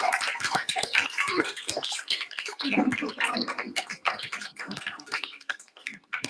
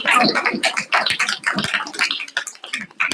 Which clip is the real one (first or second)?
second